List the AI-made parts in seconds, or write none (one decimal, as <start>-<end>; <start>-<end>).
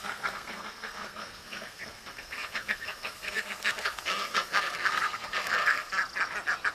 0.0-5.9